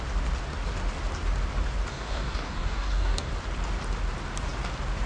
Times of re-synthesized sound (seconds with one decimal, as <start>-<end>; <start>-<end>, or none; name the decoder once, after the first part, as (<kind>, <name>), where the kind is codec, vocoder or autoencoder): 1.9-3.3 (codec, DAC)